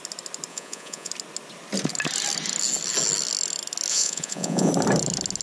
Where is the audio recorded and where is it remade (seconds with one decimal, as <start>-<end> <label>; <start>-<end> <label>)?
0.0-0.5 recorded; 0.5-1.1 remade; 1.1-3.9 recorded; 3.9-4.7 remade; 4.7-5.4 recorded